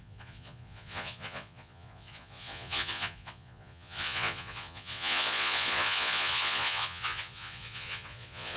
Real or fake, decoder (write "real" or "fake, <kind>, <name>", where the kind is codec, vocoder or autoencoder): fake, vocoder, Vocos